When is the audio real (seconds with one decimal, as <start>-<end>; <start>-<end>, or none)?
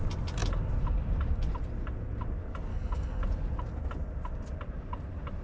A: 0.0-2.7; 3.2-5.4